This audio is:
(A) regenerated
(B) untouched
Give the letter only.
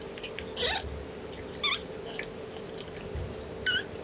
B